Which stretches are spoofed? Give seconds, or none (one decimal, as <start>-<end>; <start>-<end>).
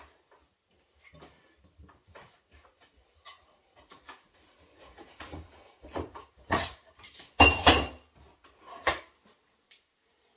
2.0-6.9; 8.3-9.0